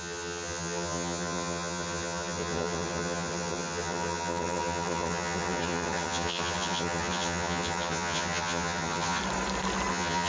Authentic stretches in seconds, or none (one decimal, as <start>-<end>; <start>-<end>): 9.2-9.9